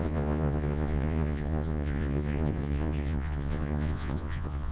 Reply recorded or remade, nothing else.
remade